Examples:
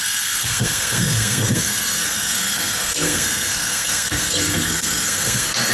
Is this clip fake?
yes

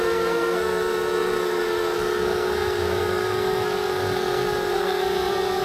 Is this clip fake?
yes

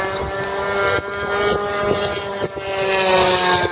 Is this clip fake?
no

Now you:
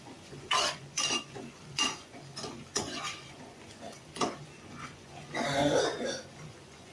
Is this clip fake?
yes